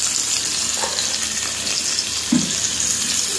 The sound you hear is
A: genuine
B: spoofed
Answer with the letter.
A